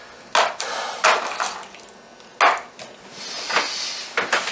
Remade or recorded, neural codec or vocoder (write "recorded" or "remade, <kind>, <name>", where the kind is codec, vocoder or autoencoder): recorded